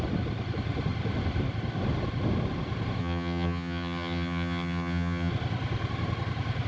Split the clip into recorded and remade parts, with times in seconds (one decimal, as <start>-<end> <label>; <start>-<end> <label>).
0.0-3.0 recorded; 3.0-5.3 remade; 5.3-6.7 recorded